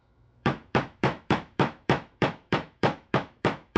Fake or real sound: fake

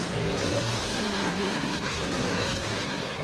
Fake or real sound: fake